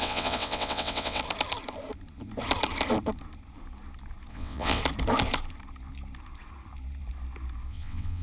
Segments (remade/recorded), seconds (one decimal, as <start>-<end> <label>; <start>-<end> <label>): 0.0-1.2 remade; 1.2-4.3 recorded; 4.3-4.8 remade; 4.8-7.7 recorded; 7.7-8.2 remade